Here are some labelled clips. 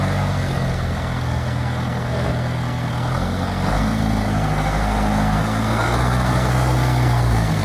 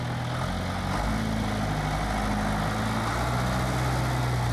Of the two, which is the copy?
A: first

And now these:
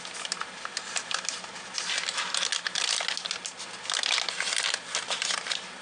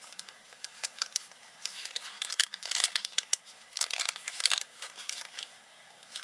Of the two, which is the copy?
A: second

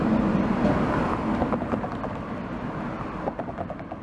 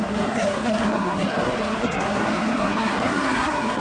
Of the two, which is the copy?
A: second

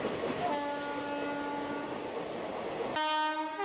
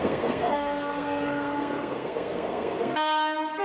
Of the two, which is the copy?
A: second